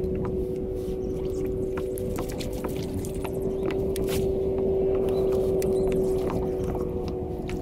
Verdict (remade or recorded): recorded